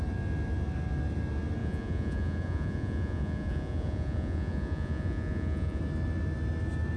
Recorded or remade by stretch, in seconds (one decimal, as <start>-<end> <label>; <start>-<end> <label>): 0.0-1.6 recorded; 1.6-5.8 remade; 5.8-7.0 recorded